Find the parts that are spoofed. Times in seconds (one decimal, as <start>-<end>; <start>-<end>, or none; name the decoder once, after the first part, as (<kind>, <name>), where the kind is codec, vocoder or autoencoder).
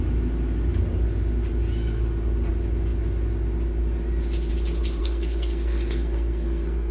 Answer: 5.0-6.9 (codec, SNAC)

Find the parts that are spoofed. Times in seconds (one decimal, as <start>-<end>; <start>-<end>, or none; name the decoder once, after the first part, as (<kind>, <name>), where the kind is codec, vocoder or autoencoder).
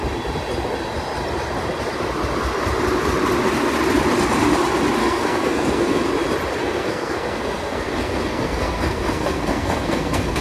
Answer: 5.0-6.1 (codec, SNAC); 6.6-10.4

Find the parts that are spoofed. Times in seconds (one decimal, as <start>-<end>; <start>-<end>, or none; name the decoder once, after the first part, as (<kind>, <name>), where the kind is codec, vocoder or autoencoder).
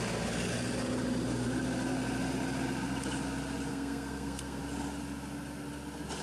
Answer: 3.7-4.6 (codec, SNAC)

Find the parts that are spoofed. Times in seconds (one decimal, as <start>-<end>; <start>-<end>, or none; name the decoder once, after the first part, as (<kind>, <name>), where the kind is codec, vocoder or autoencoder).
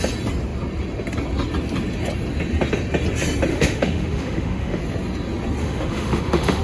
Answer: 3.5-4.8 (autoencoder, DAC-VAE); 5.6-6.6